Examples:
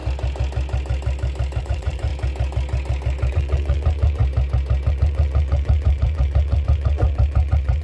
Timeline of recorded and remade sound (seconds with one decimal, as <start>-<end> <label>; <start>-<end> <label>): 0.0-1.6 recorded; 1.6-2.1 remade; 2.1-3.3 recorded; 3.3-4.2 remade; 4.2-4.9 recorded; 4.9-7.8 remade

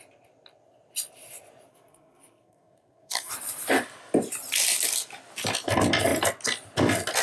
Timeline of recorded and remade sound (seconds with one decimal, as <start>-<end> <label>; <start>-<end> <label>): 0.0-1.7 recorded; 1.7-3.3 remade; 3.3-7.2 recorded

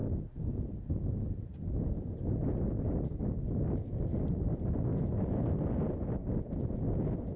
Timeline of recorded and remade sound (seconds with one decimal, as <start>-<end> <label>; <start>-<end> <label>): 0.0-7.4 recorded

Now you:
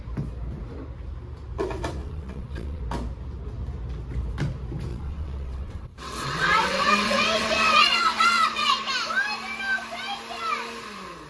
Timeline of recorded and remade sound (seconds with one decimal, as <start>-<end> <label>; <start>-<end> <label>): 0.0-2.0 recorded; 2.0-2.8 remade; 2.8-4.9 recorded; 4.9-8.9 remade; 8.9-11.3 recorded

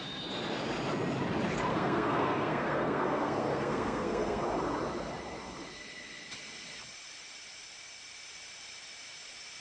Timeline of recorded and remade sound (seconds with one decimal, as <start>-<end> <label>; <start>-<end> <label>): 0.0-1.7 recorded; 1.7-4.4 remade; 4.4-9.6 recorded

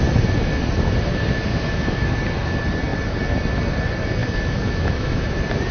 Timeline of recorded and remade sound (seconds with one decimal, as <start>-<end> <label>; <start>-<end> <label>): 0.0-1.5 recorded; 1.5-2.2 remade; 2.2-4.2 recorded; 4.2-5.3 remade; 5.3-5.7 recorded